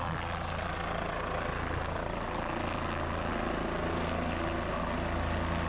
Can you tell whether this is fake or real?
real